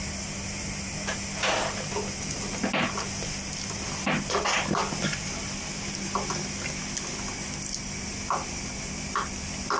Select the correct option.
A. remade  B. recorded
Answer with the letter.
B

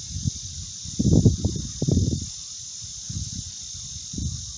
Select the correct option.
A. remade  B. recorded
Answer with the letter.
B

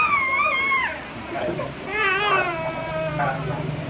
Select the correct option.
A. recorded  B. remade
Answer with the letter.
A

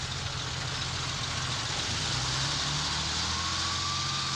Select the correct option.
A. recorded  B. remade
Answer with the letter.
A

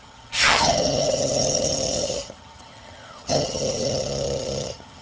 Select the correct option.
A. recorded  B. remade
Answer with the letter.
B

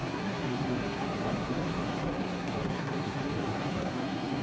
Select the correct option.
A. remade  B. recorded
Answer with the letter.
A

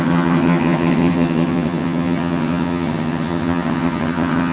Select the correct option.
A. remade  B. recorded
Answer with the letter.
A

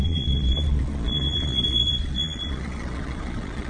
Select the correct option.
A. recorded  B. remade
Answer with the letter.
B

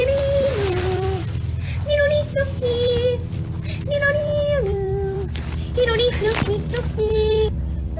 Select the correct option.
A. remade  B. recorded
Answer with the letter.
A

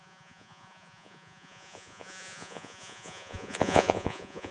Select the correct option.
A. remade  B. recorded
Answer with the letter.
A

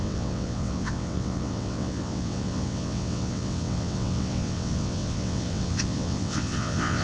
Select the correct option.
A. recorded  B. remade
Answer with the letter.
B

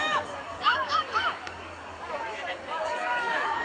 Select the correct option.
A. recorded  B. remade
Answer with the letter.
B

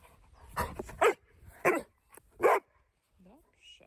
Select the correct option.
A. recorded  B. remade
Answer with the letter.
A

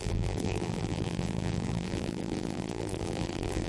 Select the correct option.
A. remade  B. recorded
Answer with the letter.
A